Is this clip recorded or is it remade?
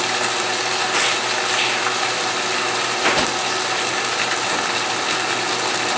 recorded